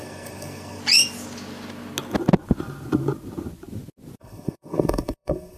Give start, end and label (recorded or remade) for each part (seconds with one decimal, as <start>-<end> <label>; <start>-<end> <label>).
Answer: 0.0-0.8 remade; 0.8-4.2 recorded; 4.2-5.6 remade